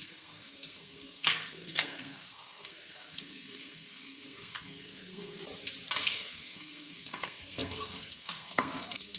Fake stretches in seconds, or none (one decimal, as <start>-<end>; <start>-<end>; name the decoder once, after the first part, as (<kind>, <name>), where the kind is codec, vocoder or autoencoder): 0.0-5.4 (codec, SNAC); 6.0-9.2